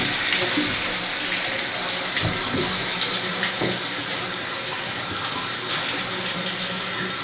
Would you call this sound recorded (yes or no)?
yes